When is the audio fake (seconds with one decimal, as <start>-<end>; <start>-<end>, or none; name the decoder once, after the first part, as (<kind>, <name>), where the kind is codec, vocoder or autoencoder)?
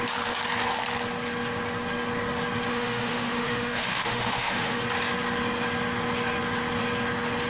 2.7-4.8 (autoencoder, DAC-VAE)